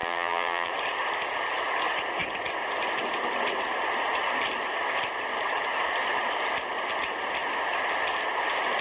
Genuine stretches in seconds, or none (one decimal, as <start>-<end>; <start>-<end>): 0.7-8.8